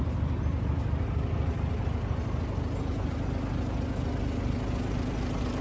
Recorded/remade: recorded